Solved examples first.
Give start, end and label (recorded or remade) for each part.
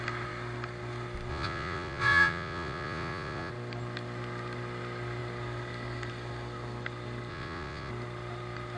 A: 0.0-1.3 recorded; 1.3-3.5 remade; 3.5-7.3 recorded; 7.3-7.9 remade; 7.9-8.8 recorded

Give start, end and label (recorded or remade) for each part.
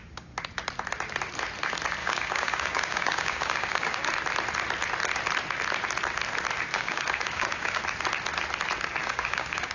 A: 0.0-2.0 recorded; 2.0-4.1 remade; 4.1-6.7 recorded; 6.7-7.8 remade; 7.8-9.0 recorded; 9.0-9.7 remade